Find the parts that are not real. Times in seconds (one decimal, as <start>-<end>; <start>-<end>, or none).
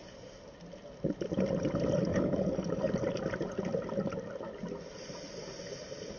2.1-2.9